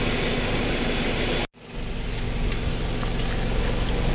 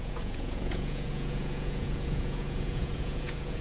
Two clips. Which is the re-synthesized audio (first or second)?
second